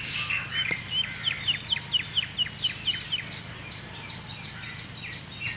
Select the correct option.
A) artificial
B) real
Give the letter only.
B